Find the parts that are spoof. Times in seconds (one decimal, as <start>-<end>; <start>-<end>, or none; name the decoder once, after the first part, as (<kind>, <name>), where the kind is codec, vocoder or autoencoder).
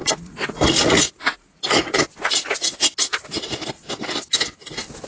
0.0-2.5 (vocoder, Vocos)